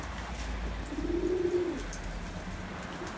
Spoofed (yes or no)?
no